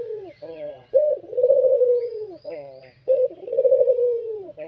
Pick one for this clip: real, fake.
fake